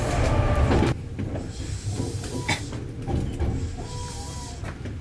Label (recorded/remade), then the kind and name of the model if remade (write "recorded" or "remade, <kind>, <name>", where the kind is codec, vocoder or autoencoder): recorded